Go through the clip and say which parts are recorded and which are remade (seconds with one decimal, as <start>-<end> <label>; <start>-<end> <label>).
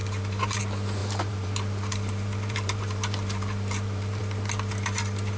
0.0-0.6 remade; 0.6-1.0 recorded; 1.0-4.2 remade; 4.2-5.4 recorded